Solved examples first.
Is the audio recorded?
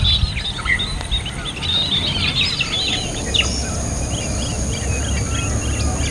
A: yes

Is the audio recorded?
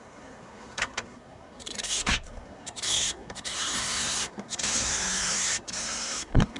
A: no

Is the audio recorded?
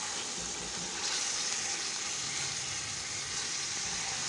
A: yes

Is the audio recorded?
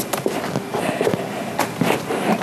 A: yes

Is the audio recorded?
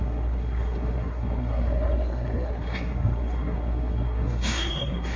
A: no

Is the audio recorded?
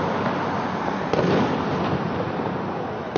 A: yes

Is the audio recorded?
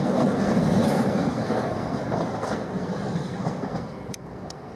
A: no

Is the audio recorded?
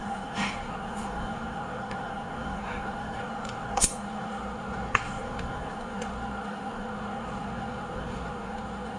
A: no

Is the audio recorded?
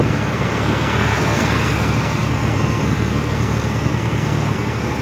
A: no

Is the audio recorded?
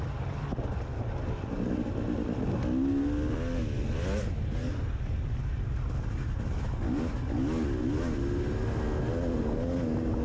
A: yes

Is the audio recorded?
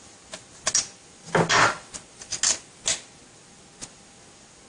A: yes